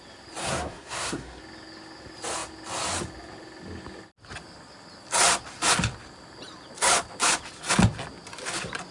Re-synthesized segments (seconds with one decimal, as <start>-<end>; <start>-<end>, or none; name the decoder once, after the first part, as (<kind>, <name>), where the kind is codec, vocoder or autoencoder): 0.4-1.4 (codec, SNAC)